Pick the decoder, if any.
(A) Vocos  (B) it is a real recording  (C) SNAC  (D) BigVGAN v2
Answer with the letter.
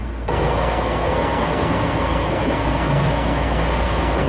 C